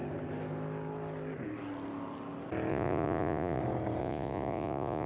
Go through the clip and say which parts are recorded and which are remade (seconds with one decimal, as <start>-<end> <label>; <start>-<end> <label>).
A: 0.0-2.7 recorded; 2.7-3.6 remade; 3.6-4.0 recorded; 4.0-5.1 remade